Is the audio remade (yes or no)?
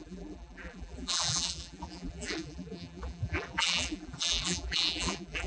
yes